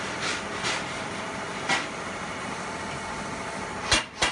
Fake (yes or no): no